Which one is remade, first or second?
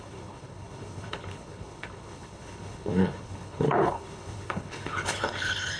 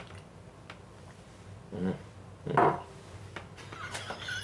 first